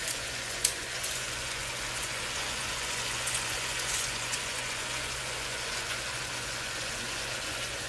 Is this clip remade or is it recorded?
remade